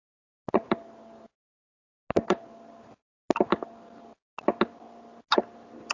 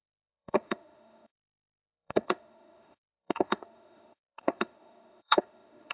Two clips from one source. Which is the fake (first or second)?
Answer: second